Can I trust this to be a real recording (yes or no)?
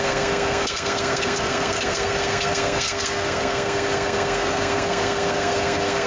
no